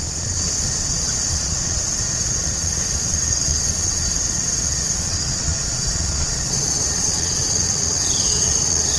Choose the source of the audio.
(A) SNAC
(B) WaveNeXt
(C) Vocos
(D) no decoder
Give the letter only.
C